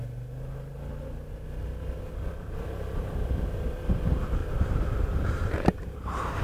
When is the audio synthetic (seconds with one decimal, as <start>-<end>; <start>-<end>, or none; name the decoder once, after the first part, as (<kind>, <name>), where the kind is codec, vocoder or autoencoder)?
4.4-6.4 (vocoder, BigVGAN v2)